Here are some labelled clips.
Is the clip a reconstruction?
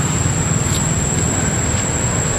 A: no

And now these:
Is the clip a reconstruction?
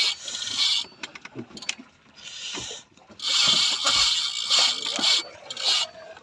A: no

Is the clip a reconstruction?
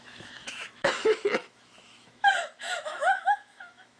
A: yes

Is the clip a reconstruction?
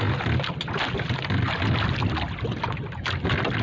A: no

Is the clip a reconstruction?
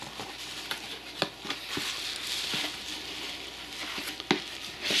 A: no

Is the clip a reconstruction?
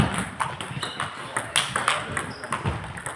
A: no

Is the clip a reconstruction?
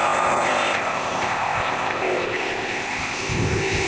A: yes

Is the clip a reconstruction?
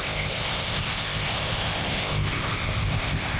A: yes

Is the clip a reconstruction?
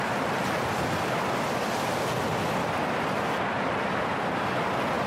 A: no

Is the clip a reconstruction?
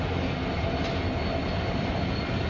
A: no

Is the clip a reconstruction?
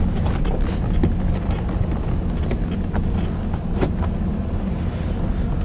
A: no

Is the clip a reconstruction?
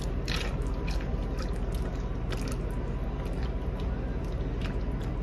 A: no